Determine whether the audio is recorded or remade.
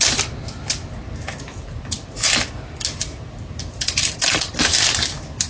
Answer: recorded